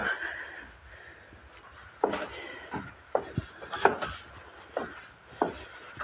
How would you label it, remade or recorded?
recorded